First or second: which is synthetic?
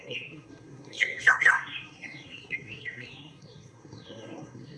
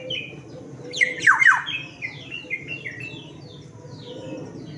first